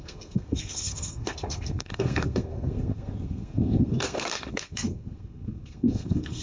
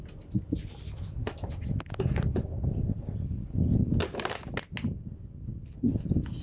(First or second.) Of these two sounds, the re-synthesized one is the first